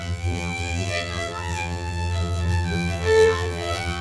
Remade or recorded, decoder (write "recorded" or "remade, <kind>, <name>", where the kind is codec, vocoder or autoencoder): remade, vocoder, BigVGAN v2